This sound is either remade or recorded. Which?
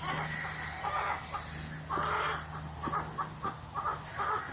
recorded